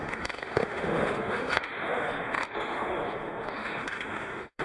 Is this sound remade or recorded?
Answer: remade